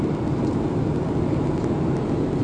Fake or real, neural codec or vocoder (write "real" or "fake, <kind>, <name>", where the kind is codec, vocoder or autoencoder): real